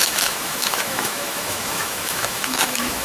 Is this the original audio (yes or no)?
no